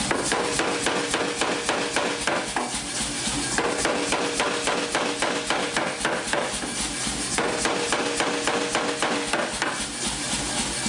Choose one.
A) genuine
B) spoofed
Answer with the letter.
A